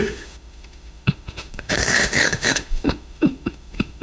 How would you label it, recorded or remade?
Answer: remade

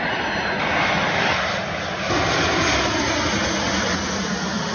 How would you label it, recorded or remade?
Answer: recorded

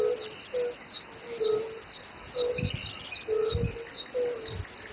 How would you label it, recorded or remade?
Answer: recorded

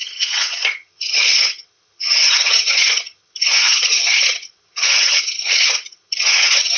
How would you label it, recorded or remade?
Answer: remade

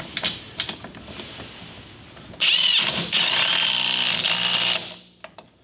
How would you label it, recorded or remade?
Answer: recorded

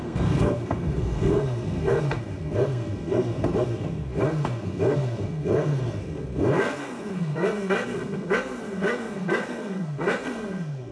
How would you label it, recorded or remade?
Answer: remade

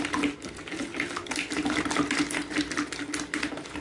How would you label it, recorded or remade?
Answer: recorded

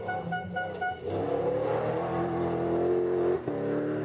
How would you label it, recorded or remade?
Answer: recorded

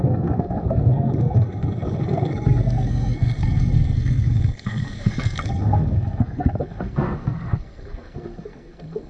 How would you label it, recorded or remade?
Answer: remade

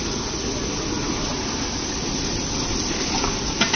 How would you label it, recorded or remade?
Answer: recorded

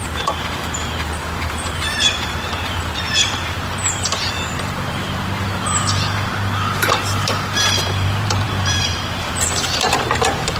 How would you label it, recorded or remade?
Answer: remade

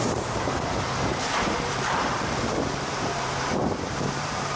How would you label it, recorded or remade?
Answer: remade